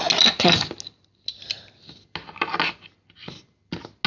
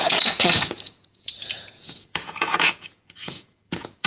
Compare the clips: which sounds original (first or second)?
first